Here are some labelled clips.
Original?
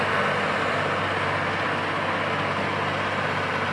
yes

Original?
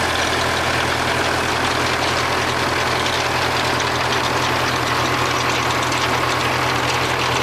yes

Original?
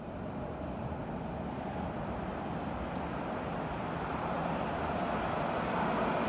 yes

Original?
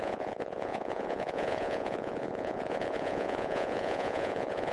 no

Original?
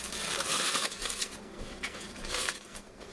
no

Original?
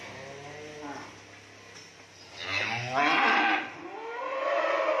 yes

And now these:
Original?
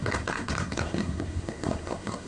no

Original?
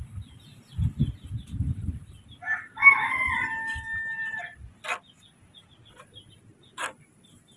yes